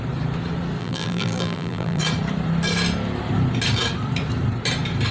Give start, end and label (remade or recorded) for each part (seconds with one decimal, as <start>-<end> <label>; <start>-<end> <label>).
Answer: 0.0-0.8 recorded; 0.8-2.0 remade; 2.0-5.1 recorded